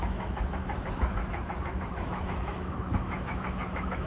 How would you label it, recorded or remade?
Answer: remade